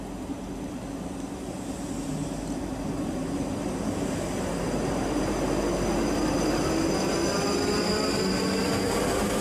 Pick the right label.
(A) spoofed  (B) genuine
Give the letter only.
B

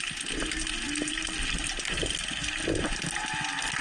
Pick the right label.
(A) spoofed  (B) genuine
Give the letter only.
B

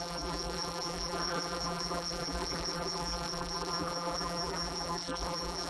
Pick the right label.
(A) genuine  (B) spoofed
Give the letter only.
B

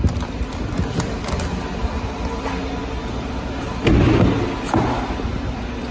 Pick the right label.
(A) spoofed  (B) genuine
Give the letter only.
B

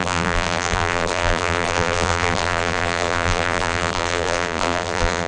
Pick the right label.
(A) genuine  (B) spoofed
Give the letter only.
B